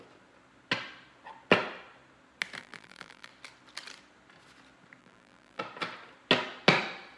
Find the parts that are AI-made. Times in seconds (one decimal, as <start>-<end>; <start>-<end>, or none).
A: 2.6-3.3; 5.0-5.6